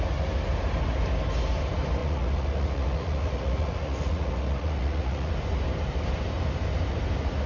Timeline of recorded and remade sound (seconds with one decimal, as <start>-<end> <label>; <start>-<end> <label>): 0.0-2.0 recorded; 2.0-5.3 remade; 5.3-7.5 recorded